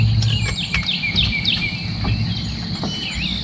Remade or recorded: recorded